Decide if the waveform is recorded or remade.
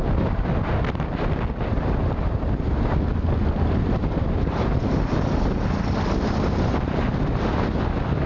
recorded